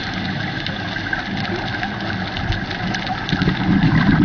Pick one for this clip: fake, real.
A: real